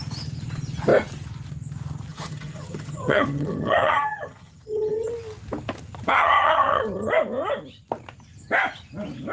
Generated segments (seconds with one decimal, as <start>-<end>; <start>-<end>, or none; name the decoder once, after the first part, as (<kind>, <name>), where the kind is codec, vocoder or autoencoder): 2.1-5.1 (vocoder, HiFi-GAN); 6.1-7.1